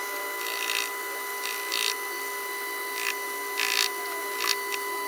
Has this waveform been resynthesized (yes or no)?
no